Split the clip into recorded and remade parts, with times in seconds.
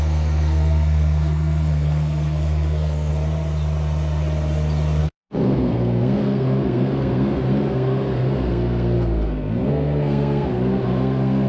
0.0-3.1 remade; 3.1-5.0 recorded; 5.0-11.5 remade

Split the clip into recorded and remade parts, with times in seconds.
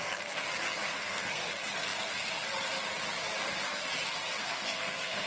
0.0-0.9 recorded; 0.9-1.5 remade; 1.5-4.4 recorded; 4.4-5.3 remade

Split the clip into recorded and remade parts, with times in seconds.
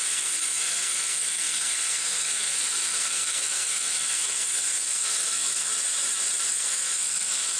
0.0-5.7 remade; 5.7-6.5 recorded; 6.5-7.6 remade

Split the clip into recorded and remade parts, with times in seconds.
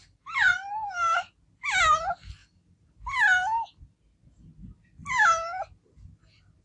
0.0-6.6 recorded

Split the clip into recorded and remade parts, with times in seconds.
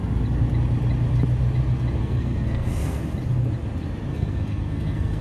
0.0-2.0 recorded; 2.0-3.0 remade; 3.0-4.1 recorded; 4.1-5.2 remade